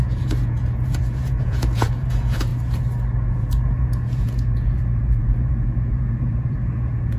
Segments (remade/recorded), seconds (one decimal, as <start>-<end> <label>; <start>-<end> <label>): 0.0-2.5 remade; 2.5-3.2 recorded; 3.2-7.2 remade